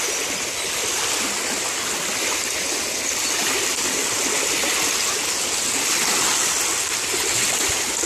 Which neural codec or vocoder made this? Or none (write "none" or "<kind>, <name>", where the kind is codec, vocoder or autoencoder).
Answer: none